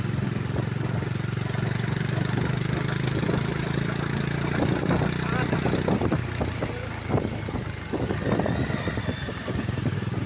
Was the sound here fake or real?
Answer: real